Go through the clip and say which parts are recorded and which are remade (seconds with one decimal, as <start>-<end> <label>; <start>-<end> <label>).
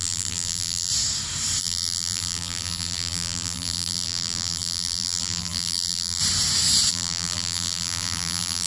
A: 0.0-0.9 remade; 0.9-1.6 recorded; 1.6-6.2 remade; 6.2-6.9 recorded; 6.9-8.7 remade